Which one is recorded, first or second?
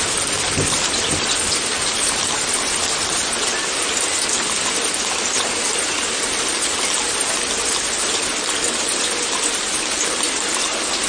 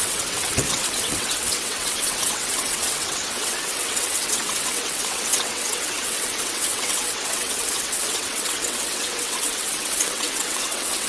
first